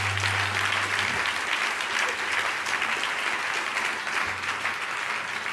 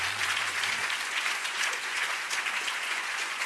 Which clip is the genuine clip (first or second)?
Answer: first